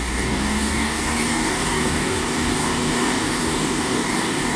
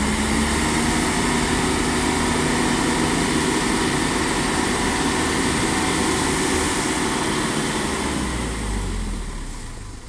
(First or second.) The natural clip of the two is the second